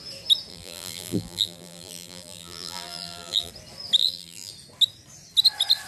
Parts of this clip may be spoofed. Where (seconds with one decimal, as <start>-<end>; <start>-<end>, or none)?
0.5-3.5; 4.0-4.5